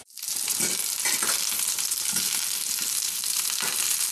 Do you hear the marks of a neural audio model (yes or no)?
yes